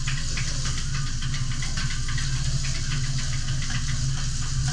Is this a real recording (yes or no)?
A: yes